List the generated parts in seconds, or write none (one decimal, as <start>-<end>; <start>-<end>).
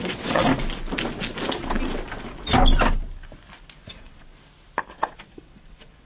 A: 0.0-0.5; 3.9-4.3; 4.9-6.1